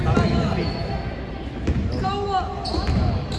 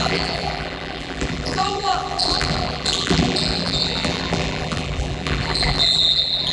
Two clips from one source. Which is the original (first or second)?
first